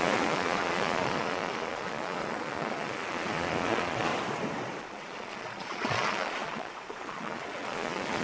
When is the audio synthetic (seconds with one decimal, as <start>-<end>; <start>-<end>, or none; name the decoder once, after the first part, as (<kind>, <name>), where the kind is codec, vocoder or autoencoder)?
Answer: 0.0-4.1 (vocoder, Vocos); 4.8-8.2